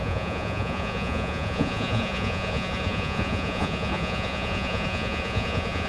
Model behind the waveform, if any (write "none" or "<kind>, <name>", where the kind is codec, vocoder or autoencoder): vocoder, Vocos